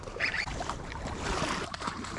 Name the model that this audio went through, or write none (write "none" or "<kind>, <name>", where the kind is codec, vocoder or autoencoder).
vocoder, BigVGAN v2